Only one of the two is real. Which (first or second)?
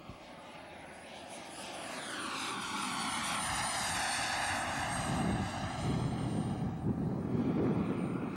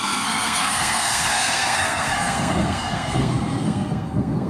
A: first